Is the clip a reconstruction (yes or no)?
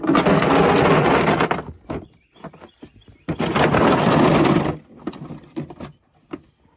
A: no